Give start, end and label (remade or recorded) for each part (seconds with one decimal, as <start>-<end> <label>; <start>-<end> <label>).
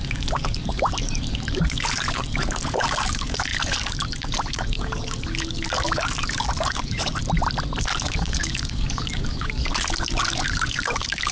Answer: 0.0-7.2 remade; 7.2-7.8 recorded; 7.8-11.3 remade